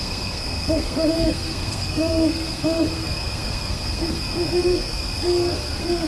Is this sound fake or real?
fake